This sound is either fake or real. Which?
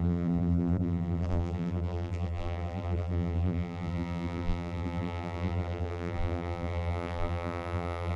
fake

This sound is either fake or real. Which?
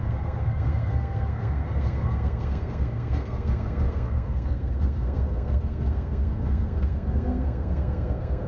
fake